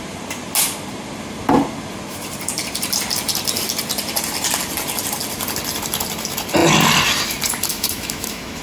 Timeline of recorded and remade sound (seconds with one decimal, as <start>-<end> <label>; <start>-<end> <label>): 0.0-7.7 recorded; 7.7-8.6 remade